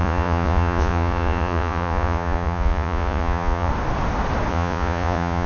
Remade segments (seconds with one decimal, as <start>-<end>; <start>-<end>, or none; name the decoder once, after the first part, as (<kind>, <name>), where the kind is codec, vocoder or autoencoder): 0.0-3.7 (vocoder, Vocos); 4.5-5.5